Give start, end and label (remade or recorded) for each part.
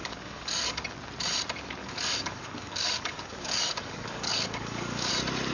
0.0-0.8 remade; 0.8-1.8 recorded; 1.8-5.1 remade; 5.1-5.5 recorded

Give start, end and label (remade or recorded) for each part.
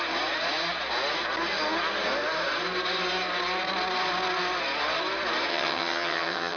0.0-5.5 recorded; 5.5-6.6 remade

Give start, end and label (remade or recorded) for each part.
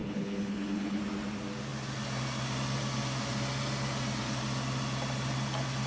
0.0-1.0 remade; 1.0-5.9 recorded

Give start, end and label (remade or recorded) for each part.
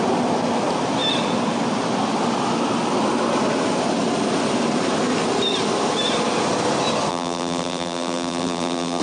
0.0-7.1 recorded; 7.1-9.0 remade